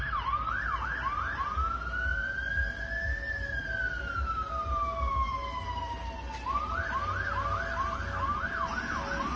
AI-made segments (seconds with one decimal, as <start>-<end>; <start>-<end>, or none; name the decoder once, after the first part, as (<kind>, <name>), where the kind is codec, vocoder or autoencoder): none